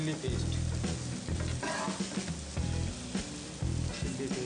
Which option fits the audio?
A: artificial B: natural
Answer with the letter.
B